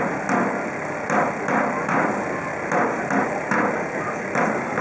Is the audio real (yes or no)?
yes